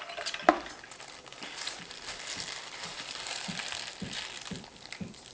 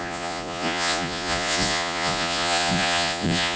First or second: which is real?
first